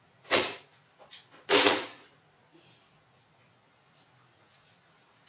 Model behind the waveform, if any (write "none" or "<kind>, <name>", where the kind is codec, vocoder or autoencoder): vocoder, Vocos